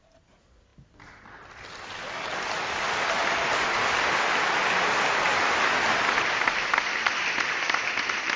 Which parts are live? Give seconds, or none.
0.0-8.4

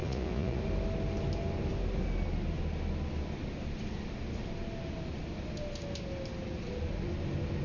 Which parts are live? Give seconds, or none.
0.6-7.6

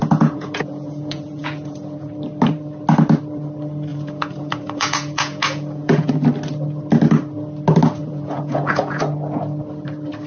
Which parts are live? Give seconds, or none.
2.1-3.9; 6.1-8.0; 9.0-10.3

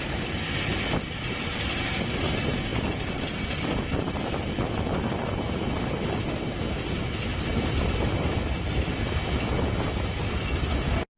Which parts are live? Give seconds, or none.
0.0-11.2